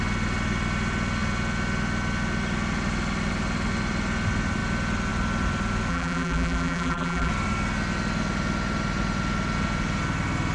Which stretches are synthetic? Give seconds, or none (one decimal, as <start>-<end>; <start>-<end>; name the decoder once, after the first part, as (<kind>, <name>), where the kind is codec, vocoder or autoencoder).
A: 5.9-7.3 (vocoder, BigVGAN v2)